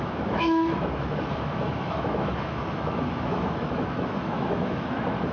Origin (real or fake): fake